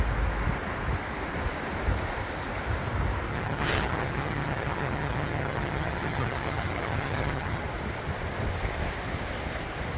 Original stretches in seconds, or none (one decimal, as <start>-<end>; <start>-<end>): 0.0-3.3; 7.6-10.0